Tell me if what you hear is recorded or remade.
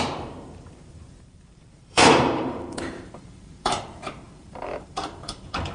remade